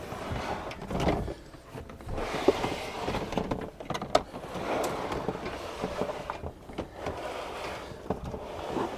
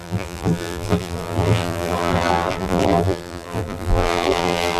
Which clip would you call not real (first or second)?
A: second